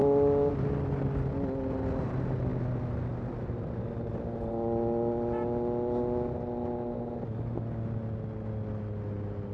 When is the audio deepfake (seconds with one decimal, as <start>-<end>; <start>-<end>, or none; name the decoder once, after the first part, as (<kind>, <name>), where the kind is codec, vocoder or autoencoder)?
none